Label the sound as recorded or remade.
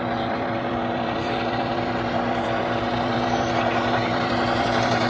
remade